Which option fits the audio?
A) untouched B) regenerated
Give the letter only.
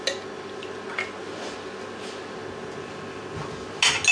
A